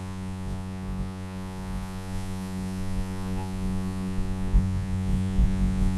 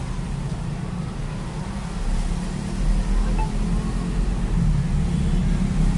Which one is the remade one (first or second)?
first